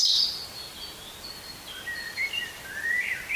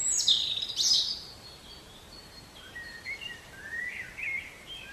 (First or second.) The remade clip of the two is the second